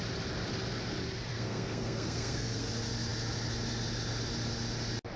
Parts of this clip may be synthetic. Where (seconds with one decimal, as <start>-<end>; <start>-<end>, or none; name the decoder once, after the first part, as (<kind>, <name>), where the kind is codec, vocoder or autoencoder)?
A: 1.3-2.7 (codec, SNAC)